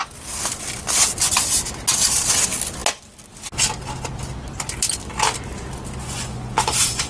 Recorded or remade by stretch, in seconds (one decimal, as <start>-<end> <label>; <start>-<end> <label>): 0.0-6.0 recorded; 6.0-7.1 remade